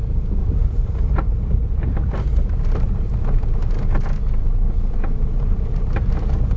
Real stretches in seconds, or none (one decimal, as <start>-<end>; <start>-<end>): 0.0-0.4; 3.2-4.4; 6.1-6.6